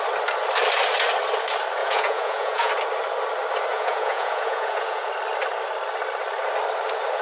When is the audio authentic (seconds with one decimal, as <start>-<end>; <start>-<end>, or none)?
0.0-1.8; 2.7-3.7; 5.1-7.2